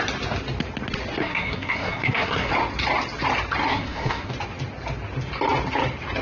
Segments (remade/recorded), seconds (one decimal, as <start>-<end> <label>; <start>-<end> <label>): 0.0-1.2 recorded; 1.2-2.5 remade; 2.5-3.7 recorded; 3.7-4.3 remade; 4.3-6.2 recorded